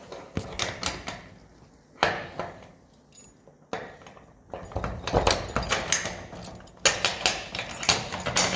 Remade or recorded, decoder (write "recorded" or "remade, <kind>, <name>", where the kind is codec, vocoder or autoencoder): recorded